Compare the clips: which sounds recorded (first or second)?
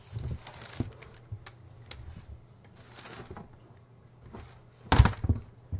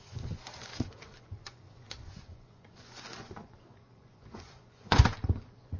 first